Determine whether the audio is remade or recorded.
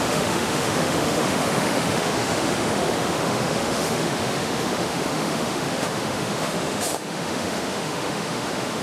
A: remade